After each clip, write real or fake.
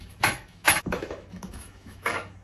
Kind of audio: fake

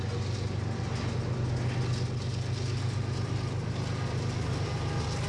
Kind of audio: real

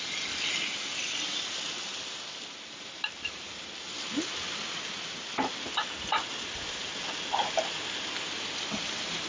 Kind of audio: real